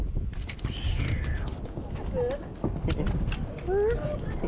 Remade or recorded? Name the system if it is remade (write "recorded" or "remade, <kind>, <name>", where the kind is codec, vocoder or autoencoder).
recorded